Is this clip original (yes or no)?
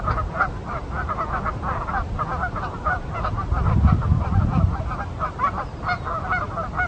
yes